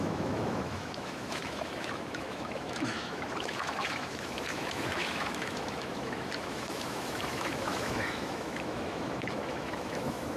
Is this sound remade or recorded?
remade